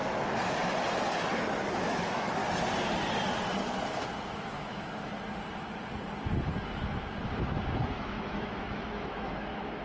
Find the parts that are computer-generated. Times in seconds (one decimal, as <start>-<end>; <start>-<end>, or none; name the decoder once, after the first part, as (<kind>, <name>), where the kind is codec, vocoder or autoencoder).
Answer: 1.8-2.4 (autoencoder, DAC-VAE); 4.2-5.1; 7.9-9.8